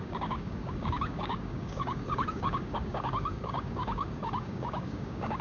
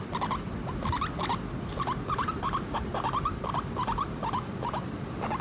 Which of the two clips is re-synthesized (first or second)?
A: first